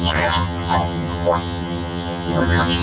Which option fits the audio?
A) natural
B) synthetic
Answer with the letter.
B